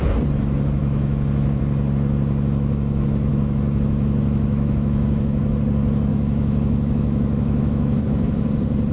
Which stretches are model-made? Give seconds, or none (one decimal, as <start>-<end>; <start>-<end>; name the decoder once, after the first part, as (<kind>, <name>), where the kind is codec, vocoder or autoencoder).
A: 0.8-1.6 (autoencoder, DAC-VAE); 3.3-5.4; 6.1-8.0